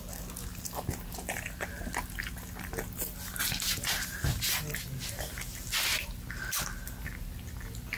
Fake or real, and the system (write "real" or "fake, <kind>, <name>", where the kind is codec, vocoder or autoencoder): real